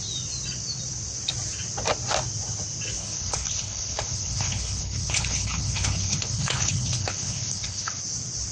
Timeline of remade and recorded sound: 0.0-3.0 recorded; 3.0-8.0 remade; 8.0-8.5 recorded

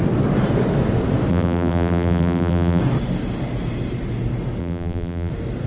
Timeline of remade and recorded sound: 0.0-1.3 recorded; 1.3-2.8 remade; 2.8-4.6 recorded; 4.6-5.3 remade; 5.3-5.7 recorded

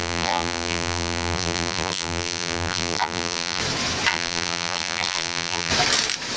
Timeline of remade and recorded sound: 0.0-3.6 remade; 3.6-4.1 recorded; 4.1-5.7 remade; 5.7-6.4 recorded

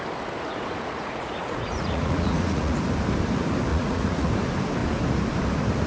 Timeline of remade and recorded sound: 0.0-0.5 recorded; 0.5-2.8 remade; 2.8-3.7 recorded; 3.7-4.3 remade; 4.3-5.9 recorded